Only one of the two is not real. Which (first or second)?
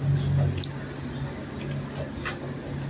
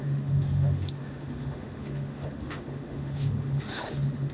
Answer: second